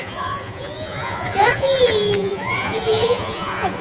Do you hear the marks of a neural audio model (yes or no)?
yes